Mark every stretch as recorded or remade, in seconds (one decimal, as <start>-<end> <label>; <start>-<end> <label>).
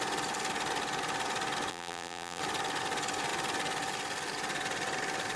0.0-1.7 recorded; 1.7-2.4 remade; 2.4-5.4 recorded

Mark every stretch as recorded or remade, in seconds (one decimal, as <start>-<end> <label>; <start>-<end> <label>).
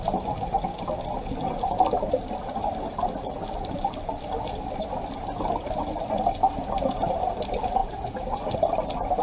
0.0-9.2 recorded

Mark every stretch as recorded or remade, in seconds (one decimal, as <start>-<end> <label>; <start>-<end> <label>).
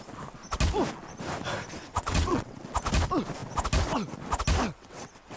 0.0-1.9 recorded; 1.9-2.6 remade; 2.6-4.7 recorded; 4.7-5.4 remade